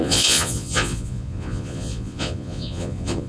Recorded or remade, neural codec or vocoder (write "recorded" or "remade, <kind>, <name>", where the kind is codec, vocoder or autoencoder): remade, vocoder, Vocos